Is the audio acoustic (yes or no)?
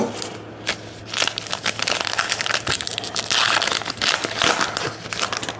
yes